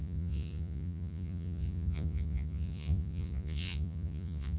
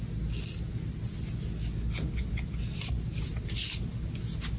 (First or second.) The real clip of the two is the second